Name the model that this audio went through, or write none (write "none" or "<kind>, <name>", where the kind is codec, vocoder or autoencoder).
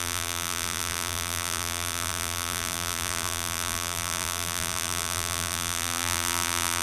vocoder, BigVGAN v2